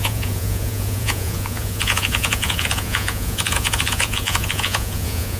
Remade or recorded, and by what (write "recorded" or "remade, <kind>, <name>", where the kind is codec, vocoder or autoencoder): remade, vocoder, Vocos